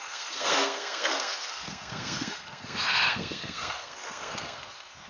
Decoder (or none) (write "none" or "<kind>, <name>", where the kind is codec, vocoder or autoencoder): codec, SNAC